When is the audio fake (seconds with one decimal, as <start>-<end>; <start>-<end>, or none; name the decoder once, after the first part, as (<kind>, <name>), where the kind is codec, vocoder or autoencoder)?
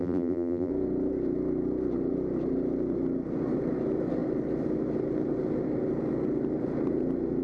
0.0-0.7 (vocoder, BigVGAN v2)